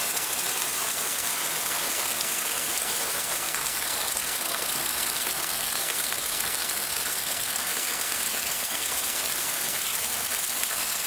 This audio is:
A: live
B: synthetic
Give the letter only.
B